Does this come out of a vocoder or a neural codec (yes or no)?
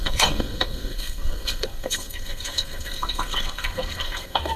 yes